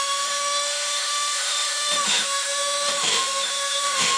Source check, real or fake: fake